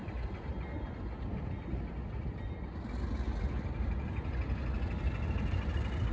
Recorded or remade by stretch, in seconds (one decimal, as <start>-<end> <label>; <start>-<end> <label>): 0.0-6.1 recorded